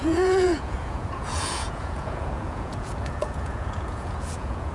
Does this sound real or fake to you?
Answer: fake